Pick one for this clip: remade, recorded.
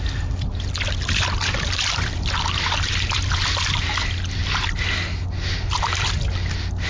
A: recorded